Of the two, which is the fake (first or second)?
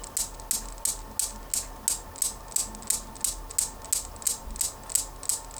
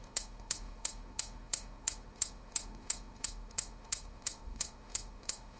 second